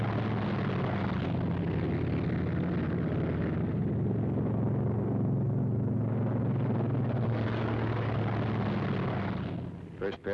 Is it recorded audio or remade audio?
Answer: recorded